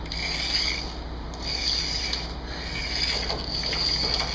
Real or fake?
real